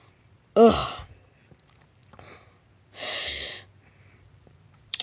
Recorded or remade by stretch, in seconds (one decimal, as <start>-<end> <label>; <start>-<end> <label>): 0.0-0.8 remade; 0.8-1.6 recorded; 1.6-2.0 remade; 2.0-4.2 recorded; 4.2-5.0 remade